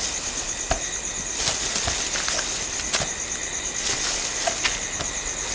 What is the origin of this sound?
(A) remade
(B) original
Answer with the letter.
B